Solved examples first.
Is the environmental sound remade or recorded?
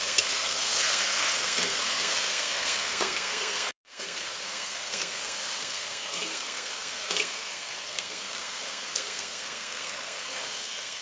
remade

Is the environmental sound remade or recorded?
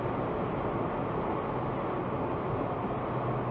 recorded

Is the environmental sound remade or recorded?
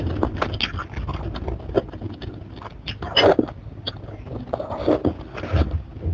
recorded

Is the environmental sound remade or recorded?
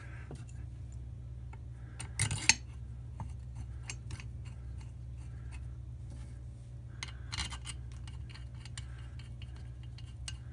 recorded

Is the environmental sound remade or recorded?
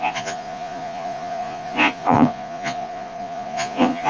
remade